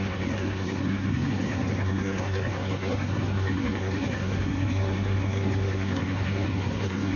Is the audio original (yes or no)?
no